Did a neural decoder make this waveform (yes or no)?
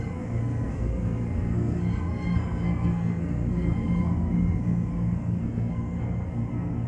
yes